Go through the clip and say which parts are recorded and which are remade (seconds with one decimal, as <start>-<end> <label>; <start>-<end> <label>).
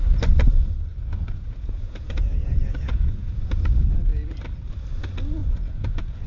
0.0-0.9 recorded; 0.9-3.5 remade; 3.5-5.4 recorded; 5.4-6.3 remade